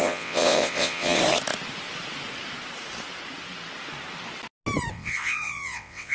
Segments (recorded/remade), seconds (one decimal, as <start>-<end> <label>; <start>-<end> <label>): 0.0-1.2 remade; 1.2-4.9 recorded; 4.9-6.1 remade